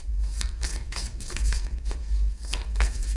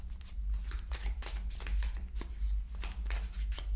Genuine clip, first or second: second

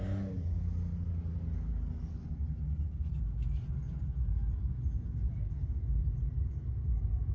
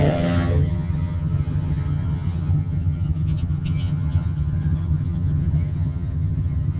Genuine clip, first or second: first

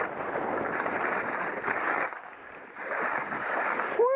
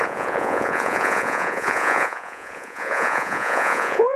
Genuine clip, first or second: first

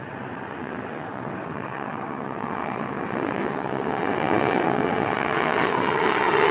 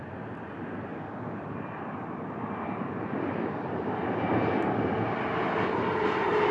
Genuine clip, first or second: second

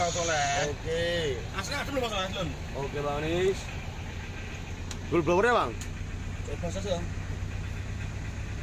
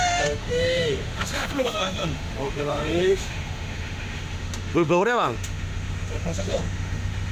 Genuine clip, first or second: first